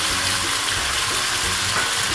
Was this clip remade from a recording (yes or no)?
no